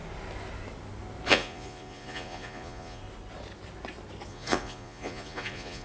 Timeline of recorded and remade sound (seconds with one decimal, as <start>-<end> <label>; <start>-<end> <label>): 0.0-1.3 recorded; 1.3-3.0 remade; 3.0-4.3 recorded; 4.3-5.8 remade